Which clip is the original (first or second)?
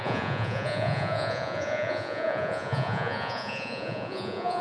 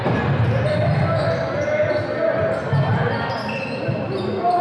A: second